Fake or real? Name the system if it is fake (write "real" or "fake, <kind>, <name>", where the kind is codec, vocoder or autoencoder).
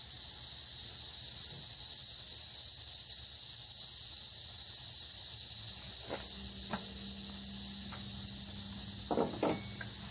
real